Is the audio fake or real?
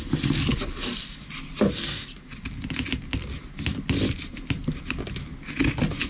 real